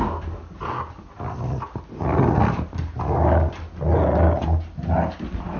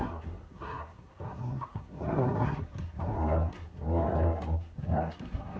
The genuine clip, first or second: first